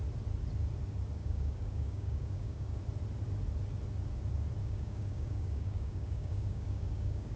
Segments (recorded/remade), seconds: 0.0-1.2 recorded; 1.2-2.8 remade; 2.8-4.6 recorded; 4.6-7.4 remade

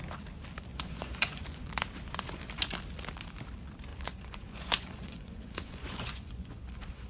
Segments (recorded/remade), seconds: 0.0-0.7 recorded; 0.7-1.7 remade; 1.7-3.9 recorded; 3.9-7.1 remade

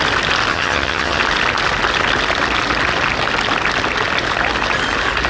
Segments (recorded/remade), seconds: 0.0-0.5 recorded; 0.5-1.2 remade; 1.2-5.3 recorded

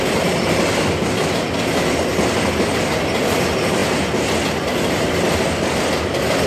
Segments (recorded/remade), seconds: 0.0-6.5 recorded